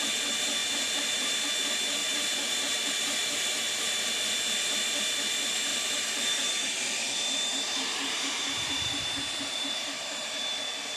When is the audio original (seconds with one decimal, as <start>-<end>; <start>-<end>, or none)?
0.0-0.6; 1.5-2.0; 2.9-5.7; 10.6-11.0